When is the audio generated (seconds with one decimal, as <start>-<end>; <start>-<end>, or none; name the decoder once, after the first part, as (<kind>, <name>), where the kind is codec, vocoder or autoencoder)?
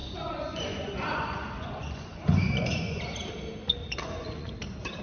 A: 0.0-3.0 (vocoder, Vocos); 3.8-4.5